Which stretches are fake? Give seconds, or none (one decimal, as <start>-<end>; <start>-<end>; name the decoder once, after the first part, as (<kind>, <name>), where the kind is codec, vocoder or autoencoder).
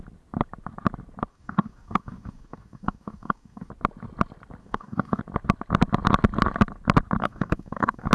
1.3-3.7 (codec, DAC); 4.6-5.2; 7.2-8.1